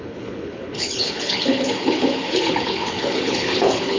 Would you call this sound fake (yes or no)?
yes